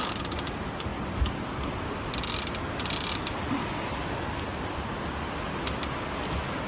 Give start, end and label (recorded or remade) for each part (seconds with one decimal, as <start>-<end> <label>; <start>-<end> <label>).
0.0-6.7 recorded